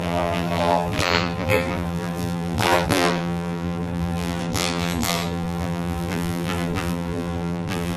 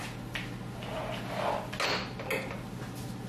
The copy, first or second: first